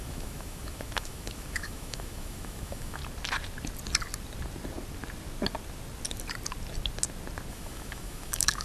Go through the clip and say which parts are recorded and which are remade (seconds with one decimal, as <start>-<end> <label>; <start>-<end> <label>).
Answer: 0.0-3.0 remade; 3.0-7.5 recorded; 7.5-8.6 remade